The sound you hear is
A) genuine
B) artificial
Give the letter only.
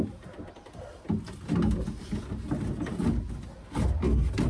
A